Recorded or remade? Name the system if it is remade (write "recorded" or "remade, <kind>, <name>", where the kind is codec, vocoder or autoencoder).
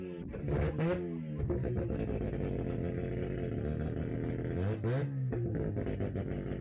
recorded